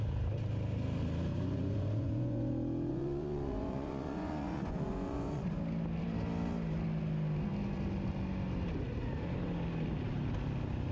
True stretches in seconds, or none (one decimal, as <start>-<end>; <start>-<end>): 0.0-1.3; 2.5-2.9; 5.5-10.9